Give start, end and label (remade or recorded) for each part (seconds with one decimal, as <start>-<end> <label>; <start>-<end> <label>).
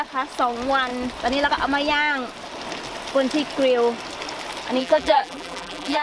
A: 0.0-4.8 recorded; 4.8-6.0 remade